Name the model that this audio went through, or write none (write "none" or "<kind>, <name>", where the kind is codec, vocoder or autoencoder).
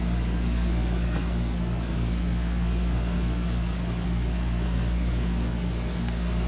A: codec, SNAC